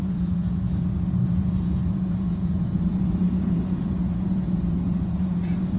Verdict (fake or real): fake